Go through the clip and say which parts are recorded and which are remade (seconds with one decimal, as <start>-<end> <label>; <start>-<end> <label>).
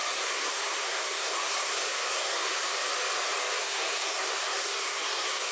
0.0-2.7 remade; 2.7-3.6 recorded; 3.6-5.5 remade